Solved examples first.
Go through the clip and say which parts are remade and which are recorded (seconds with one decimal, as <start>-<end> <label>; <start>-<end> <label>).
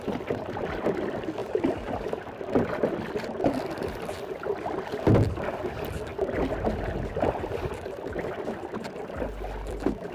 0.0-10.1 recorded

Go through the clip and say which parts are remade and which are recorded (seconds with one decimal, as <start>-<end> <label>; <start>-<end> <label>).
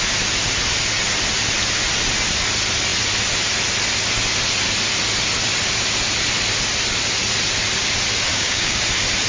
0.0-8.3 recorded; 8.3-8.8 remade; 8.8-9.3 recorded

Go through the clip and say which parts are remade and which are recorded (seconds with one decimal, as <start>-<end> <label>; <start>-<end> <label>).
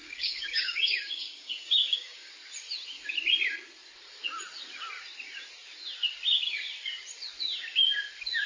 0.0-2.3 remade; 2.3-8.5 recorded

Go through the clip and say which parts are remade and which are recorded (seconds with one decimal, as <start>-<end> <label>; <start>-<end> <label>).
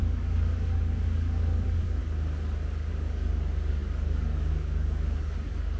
0.0-2.0 remade; 2.0-2.9 recorded; 2.9-5.8 remade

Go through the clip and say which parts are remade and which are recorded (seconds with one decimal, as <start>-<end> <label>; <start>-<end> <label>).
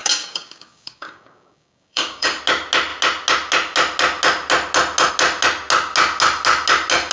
0.0-2.4 remade; 2.4-7.1 recorded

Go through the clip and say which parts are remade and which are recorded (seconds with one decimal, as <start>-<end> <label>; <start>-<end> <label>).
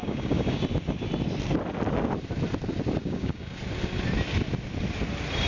0.0-0.6 remade; 0.6-3.0 recorded; 3.0-3.6 remade; 3.6-5.5 recorded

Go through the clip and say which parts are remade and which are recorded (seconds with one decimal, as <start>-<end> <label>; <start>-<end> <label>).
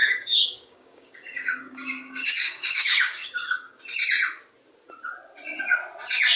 0.0-3.8 remade; 3.8-6.4 recorded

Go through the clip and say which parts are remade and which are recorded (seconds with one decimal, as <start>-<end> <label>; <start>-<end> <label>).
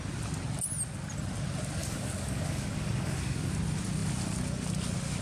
0.0-1.8 recorded; 1.8-3.5 remade; 3.5-5.2 recorded